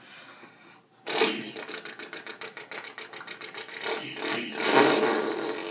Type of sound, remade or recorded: recorded